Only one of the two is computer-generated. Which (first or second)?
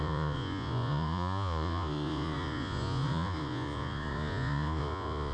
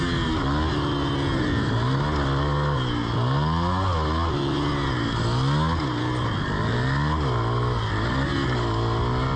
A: first